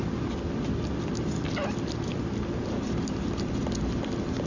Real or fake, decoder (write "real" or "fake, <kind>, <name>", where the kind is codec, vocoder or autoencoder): real